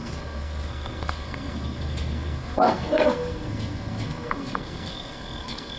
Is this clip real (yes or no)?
no